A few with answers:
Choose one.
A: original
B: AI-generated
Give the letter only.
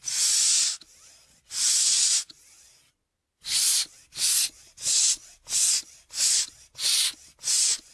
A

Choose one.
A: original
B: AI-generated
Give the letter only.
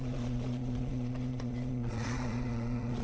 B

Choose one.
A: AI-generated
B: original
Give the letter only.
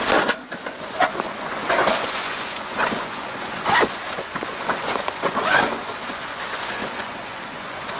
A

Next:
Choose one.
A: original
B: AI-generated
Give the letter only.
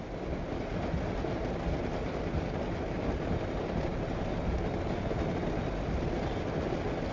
A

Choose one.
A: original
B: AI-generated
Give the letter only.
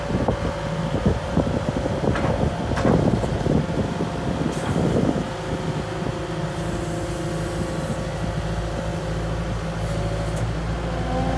A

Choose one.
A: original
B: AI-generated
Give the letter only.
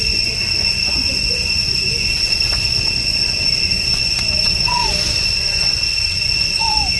B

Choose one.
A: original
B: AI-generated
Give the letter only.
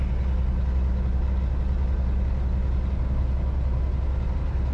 A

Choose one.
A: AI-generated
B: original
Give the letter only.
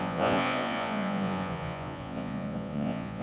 A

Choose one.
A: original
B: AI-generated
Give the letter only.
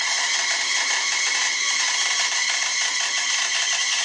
A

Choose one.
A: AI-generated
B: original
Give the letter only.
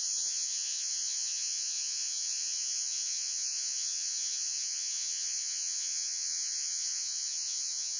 A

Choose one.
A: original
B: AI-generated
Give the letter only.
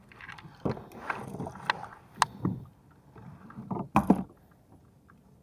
A